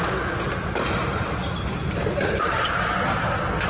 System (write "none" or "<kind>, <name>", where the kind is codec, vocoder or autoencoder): none